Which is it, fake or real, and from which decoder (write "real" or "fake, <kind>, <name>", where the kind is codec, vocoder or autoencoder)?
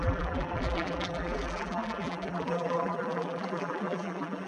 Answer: fake, vocoder, BigVGAN v2